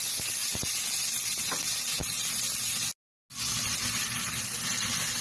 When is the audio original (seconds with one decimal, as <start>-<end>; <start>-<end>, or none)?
0.0-5.2